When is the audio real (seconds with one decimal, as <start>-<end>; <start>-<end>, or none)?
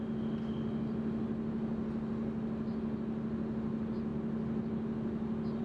0.0-5.6